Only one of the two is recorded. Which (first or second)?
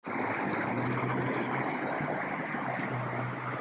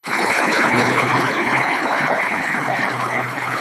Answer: first